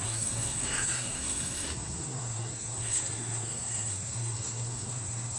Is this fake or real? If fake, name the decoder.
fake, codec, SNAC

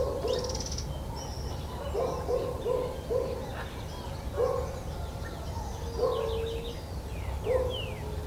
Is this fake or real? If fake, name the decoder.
real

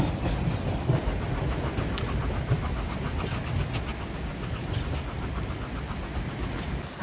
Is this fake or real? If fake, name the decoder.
real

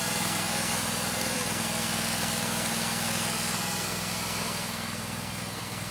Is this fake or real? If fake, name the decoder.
fake, codec, SNAC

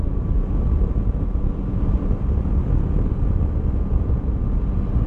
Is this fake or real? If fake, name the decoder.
real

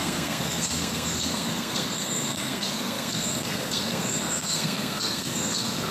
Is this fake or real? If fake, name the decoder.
fake, codec, SNAC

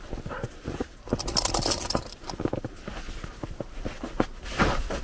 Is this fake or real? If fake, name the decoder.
real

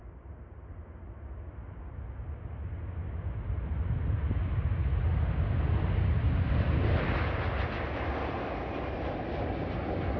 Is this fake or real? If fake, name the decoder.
real